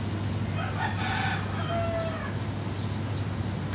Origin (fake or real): real